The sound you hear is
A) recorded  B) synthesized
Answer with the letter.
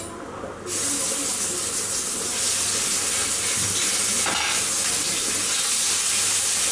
A